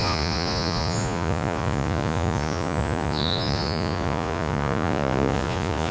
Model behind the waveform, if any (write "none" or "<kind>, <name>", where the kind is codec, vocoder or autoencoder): vocoder, Vocos